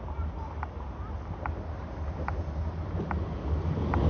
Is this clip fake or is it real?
real